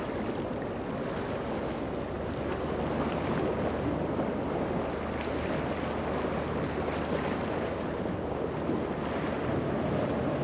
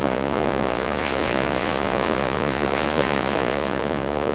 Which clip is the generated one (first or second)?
second